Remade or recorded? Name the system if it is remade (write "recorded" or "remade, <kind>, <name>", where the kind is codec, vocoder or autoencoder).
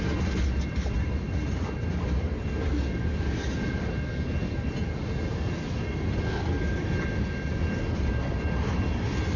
recorded